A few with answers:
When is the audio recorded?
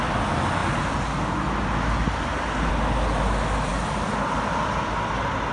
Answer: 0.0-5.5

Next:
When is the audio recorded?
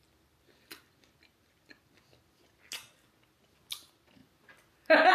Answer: 0.0-5.1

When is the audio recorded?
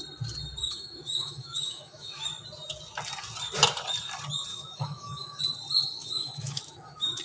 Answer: 0.0-0.6; 2.3-4.5; 5.4-6.0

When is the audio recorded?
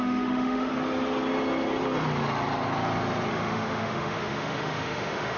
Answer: 0.7-3.3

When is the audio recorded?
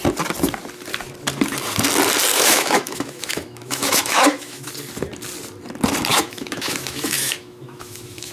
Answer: 0.0-2.3; 4.7-6.1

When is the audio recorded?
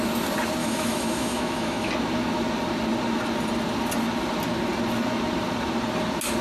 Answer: 0.0-0.6; 1.9-6.4